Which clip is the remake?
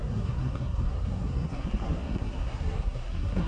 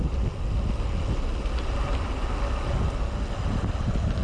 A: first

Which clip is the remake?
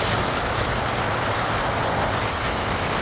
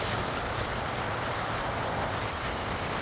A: second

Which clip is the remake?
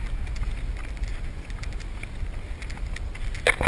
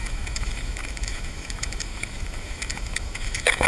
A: second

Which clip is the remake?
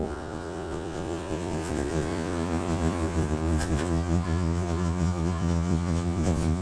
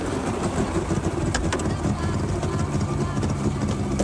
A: first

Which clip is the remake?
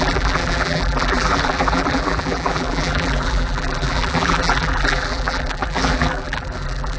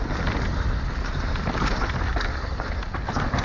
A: first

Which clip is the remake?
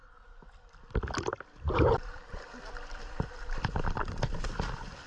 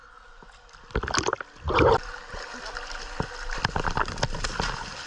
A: first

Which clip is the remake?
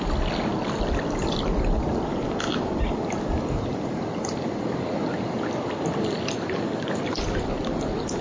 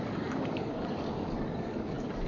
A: second